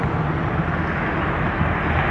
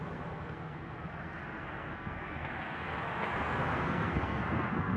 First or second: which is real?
first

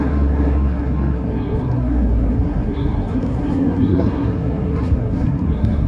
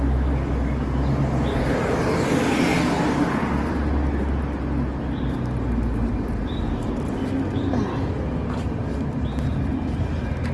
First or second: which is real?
second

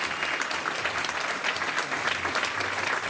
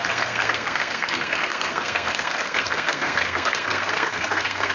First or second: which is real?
first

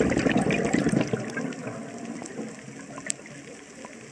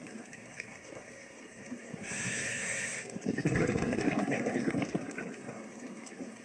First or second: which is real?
first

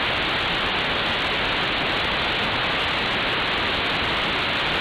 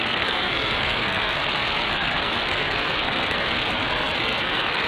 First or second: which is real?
first